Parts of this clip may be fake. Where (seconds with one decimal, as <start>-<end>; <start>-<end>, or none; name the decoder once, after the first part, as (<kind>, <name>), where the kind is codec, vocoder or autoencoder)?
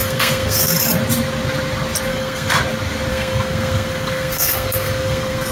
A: 0.0-0.7 (codec, SNAC); 2.1-2.6; 3.1-5.5